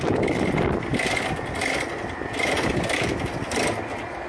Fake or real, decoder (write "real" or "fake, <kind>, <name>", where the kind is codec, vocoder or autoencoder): real